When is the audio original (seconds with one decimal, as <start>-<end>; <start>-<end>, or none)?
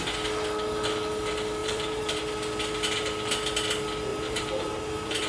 0.0-1.6; 2.2-4.1